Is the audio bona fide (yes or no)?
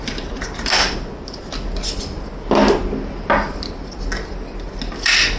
yes